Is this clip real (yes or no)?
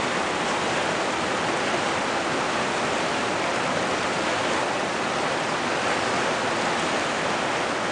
yes